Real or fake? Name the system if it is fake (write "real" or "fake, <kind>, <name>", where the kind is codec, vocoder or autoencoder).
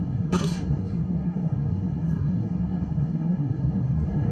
fake, codec, SNAC